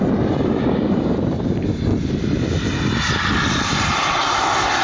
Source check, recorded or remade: recorded